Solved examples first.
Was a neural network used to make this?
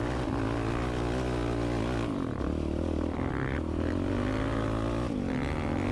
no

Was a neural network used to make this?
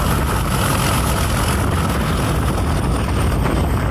no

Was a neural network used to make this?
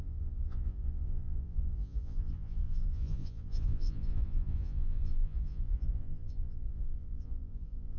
yes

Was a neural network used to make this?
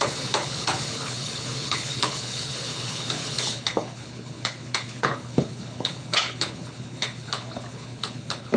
yes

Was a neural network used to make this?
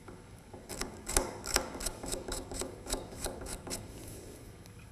yes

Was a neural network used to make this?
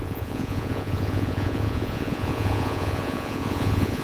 yes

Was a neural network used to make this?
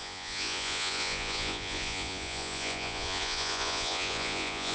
yes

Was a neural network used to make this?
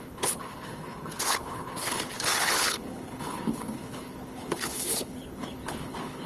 yes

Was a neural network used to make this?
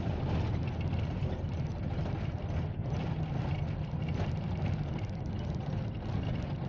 no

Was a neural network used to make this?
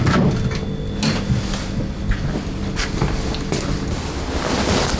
no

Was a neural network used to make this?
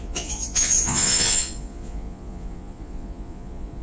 yes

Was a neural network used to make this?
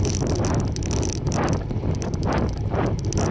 no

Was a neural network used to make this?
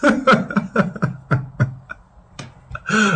no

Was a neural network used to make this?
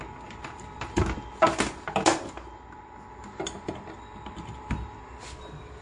no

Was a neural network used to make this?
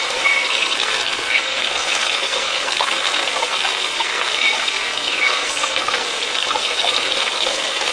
yes